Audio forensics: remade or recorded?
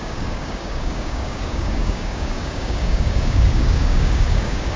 remade